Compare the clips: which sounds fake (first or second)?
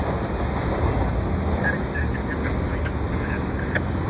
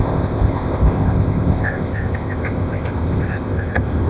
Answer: second